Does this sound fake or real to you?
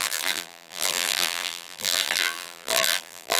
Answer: fake